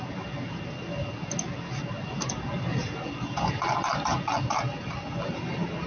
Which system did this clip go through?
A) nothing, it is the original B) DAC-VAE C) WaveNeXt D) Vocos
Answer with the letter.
A